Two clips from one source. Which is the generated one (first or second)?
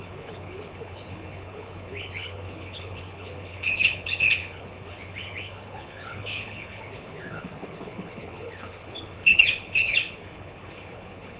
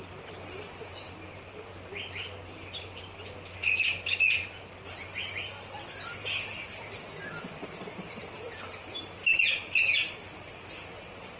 first